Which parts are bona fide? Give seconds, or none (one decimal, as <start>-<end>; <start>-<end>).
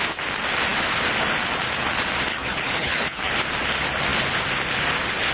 0.0-2.3; 3.3-5.3